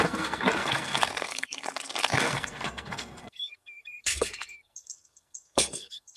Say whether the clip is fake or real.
fake